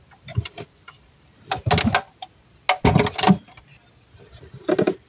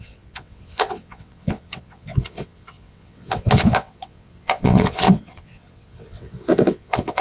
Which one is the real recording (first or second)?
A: first